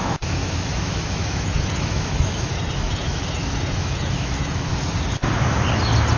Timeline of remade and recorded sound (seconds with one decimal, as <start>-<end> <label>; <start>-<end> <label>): 0.0-4.7 remade; 4.7-6.2 recorded